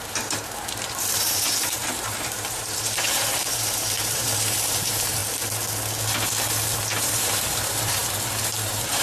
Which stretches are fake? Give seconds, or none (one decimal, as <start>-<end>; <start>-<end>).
0.0-5.2; 7.0-9.0